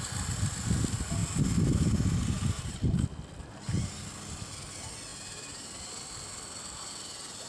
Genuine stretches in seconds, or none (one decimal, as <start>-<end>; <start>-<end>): 0.0-7.5